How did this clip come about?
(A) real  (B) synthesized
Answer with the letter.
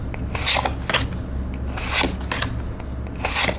A